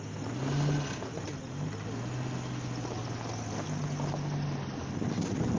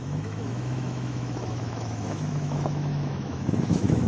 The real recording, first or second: first